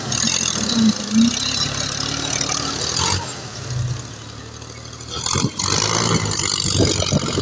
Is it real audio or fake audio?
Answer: real